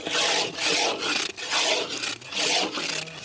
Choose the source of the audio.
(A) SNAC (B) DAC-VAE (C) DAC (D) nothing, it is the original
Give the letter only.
D